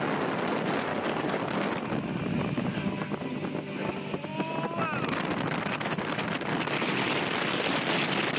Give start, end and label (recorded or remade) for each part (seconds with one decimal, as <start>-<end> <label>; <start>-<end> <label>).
0.0-0.9 recorded; 0.9-1.4 remade; 1.4-8.4 recorded